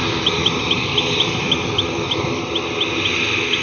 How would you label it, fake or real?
real